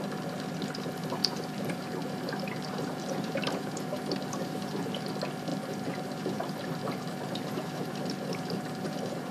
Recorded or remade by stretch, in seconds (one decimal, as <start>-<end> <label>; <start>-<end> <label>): 0.0-1.2 recorded; 1.2-5.1 remade; 5.1-5.5 recorded; 5.5-9.3 remade